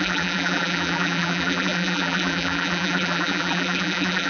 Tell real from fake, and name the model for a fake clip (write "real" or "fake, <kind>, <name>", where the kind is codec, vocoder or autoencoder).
fake, vocoder, BigVGAN v2